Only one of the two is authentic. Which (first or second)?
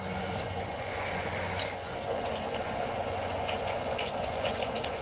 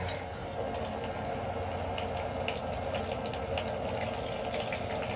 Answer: second